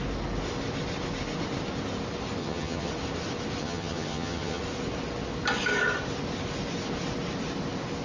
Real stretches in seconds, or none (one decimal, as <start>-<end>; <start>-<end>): 0.0-2.4; 2.9-3.6; 4.6-8.0